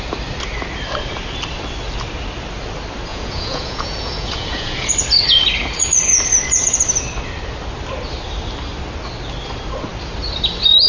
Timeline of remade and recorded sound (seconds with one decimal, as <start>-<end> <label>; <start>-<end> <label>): 0.0-3.1 recorded; 3.1-4.9 remade; 4.9-10.9 recorded